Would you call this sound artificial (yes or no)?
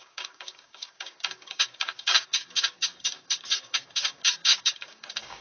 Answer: yes